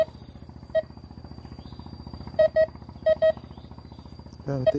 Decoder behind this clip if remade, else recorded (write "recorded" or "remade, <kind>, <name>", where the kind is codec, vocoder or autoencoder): remade, vocoder, BigVGAN v2